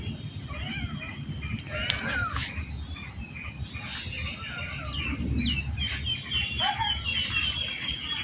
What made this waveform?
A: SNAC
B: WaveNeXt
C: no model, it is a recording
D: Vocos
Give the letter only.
C